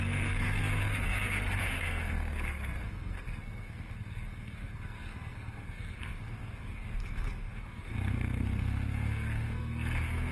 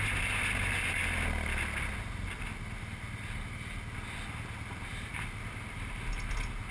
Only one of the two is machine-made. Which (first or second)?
first